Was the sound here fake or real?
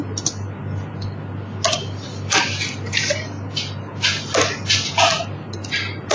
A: real